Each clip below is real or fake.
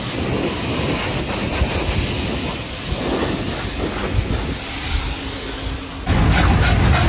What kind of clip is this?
real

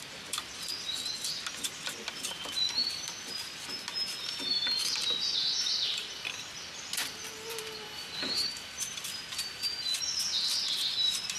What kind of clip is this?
real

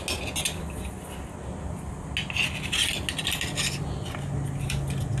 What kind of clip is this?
real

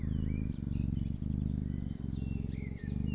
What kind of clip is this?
real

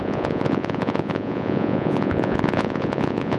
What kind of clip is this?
fake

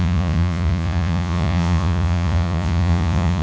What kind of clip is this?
fake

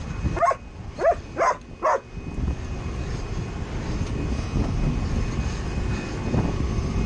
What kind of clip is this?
real